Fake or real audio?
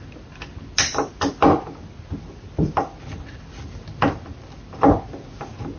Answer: real